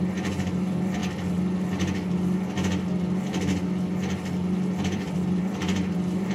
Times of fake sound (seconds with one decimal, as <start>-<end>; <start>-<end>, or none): 0.0-1.0; 4.8-6.3